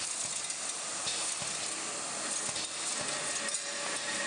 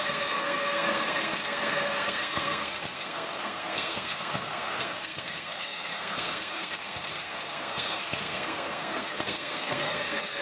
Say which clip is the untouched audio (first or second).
first